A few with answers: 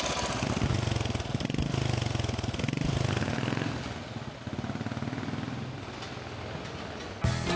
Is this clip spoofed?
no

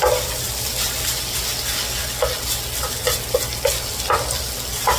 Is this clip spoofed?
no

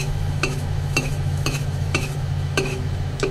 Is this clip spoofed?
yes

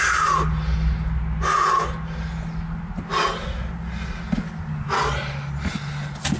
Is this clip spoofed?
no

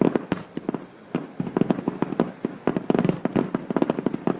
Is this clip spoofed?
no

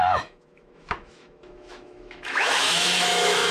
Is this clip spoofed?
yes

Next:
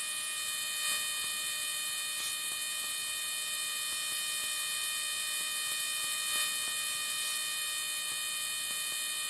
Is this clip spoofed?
no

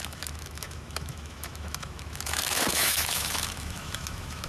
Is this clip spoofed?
yes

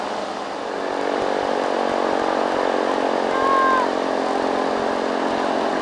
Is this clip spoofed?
no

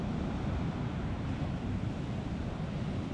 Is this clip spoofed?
no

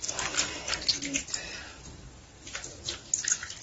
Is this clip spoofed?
no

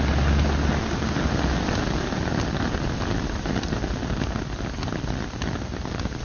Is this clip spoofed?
no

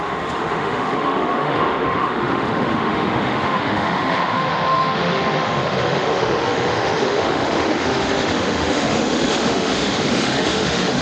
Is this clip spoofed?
yes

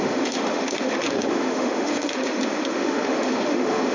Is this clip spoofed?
yes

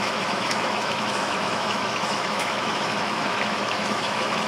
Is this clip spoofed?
yes